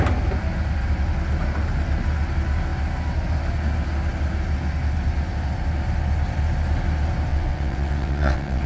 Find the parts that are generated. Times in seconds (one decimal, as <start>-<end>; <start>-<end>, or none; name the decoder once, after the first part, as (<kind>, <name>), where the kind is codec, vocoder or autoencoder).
7.3-8.7 (vocoder, WaveNeXt)